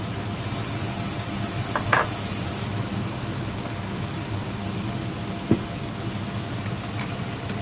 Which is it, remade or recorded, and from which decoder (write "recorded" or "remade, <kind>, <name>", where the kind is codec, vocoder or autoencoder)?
recorded